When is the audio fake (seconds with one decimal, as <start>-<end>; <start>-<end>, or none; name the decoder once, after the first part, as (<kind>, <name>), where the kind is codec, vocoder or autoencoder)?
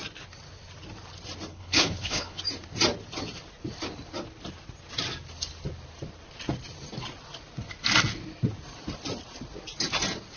1.5-2.4 (codec, HILCodec)